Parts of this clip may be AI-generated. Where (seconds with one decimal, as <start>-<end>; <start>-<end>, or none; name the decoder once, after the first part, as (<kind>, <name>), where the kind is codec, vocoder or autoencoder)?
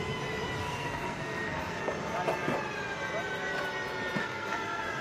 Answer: 0.6-1.8 (codec, SNAC); 4.2-5.0